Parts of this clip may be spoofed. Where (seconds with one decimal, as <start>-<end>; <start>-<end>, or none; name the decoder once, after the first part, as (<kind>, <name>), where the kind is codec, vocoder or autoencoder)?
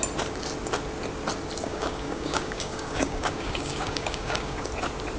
1.6-4.7 (codec, DAC)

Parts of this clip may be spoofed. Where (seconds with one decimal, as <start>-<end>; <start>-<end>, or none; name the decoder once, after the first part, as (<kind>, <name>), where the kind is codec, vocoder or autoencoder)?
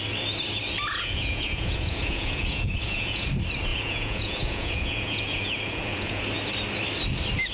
0.9-3.3 (vocoder, Vocos); 3.7-6.2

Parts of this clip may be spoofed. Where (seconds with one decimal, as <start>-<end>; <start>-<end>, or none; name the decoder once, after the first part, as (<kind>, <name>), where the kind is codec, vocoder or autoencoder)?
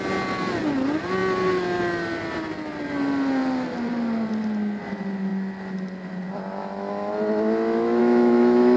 6.6-7.1 (autoencoder, DAC-VAE); 8.0-8.8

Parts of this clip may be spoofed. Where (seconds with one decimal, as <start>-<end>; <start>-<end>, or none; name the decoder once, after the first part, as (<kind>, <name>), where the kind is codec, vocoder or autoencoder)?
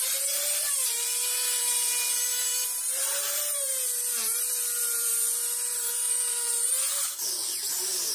0.0-8.1 (vocoder, BigVGAN v2)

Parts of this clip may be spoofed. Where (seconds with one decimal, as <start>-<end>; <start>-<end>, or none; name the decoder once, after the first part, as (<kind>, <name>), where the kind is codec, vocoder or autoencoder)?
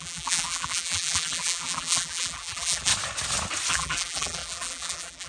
0.0-2.9 (vocoder, BigVGAN v2); 3.7-5.3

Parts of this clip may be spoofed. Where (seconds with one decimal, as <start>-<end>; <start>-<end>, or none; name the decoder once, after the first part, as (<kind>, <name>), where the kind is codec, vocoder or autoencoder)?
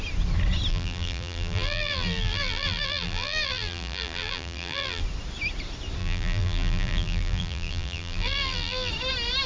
0.7-5.0 (vocoder, BigVGAN v2); 6.0-8.9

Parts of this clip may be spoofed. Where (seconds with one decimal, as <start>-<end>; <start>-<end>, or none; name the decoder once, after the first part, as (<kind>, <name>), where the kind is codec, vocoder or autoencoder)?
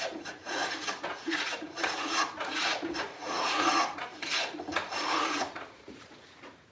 0.0-6.7 (vocoder, Vocos)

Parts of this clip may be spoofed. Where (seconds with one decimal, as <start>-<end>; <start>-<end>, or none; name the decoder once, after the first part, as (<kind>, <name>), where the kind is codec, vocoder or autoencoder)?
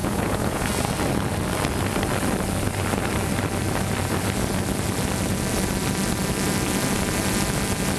0.0-0.7 (vocoder, Vocos)